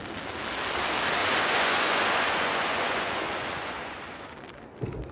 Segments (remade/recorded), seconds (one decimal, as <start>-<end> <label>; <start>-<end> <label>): 0.0-1.2 recorded; 1.2-4.3 remade; 4.3-5.1 recorded